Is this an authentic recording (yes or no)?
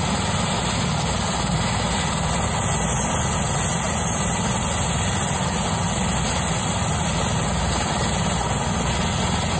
yes